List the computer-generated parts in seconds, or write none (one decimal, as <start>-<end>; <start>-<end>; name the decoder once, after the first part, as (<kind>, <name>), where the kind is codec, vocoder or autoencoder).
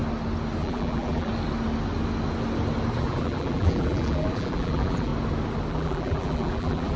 0.6-1.3 (vocoder, BigVGAN v2); 3.0-5.1; 5.7-7.0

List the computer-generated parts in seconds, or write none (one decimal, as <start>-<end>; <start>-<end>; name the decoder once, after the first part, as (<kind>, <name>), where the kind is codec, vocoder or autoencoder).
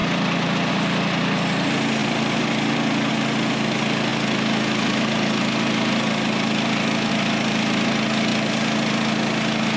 0.0-0.7 (vocoder, BigVGAN v2); 2.0-3.1; 8.3-8.9